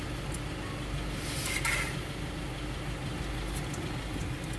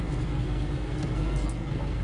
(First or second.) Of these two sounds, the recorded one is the first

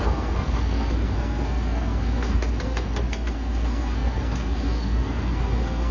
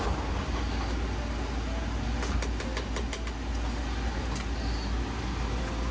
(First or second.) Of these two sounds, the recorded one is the second